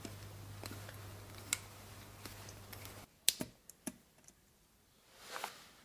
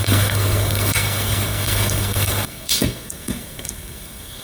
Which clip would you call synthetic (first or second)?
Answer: second